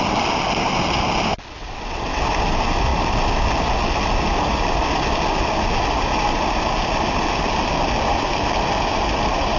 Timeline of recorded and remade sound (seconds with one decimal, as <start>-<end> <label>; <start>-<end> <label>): 0.0-1.6 recorded; 1.6-2.2 remade; 2.2-9.6 recorded